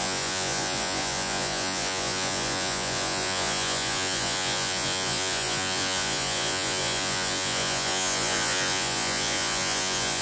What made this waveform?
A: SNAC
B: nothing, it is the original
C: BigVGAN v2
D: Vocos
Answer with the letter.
D